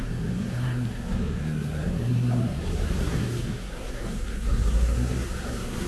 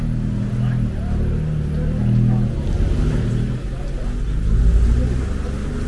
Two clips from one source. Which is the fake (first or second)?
first